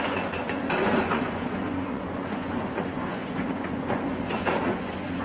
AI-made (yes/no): yes